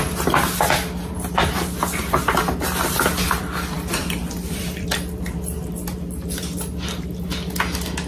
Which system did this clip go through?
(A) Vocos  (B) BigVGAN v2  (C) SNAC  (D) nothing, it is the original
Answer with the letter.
B